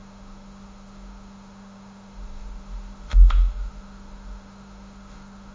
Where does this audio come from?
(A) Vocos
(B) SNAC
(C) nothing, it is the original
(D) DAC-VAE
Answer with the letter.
D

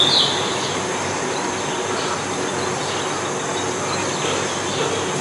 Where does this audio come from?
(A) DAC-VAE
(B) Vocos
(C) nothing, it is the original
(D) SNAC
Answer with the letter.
C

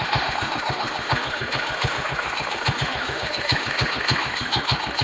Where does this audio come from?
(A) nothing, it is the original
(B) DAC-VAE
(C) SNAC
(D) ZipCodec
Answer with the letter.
B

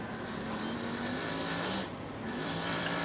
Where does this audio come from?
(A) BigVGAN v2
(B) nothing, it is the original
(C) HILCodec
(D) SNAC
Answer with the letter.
A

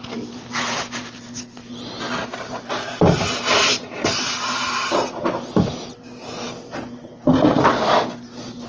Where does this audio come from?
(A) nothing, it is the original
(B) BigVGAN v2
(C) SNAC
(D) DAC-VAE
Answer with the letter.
A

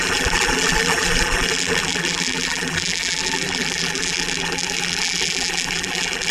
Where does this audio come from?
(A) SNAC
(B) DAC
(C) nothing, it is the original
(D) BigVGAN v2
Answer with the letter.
D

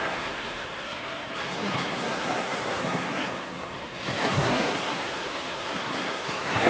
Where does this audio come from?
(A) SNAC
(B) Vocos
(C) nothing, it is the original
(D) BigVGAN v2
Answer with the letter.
A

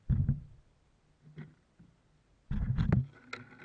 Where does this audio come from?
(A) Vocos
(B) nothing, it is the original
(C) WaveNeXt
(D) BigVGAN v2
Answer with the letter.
B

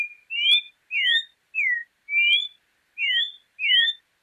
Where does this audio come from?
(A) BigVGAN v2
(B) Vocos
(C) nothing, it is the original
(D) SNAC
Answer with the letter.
C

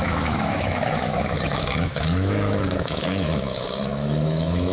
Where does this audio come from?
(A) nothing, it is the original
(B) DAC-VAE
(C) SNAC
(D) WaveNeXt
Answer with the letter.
B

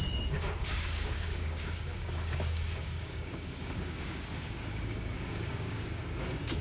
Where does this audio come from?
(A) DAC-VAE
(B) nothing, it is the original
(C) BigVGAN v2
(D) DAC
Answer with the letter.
D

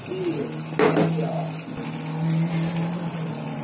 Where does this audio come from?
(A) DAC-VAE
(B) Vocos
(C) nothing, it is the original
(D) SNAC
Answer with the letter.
C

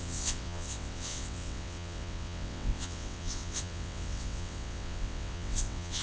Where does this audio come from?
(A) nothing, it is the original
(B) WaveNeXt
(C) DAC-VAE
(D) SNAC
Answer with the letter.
B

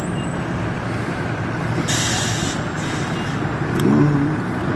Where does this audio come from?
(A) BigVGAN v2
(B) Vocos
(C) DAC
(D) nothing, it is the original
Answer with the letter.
D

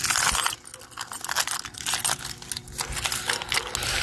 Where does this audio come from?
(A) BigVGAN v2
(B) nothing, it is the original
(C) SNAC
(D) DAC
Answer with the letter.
B